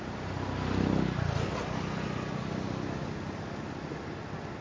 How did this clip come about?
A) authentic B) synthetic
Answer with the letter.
A